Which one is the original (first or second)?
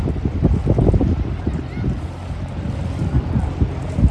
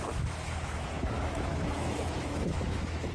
first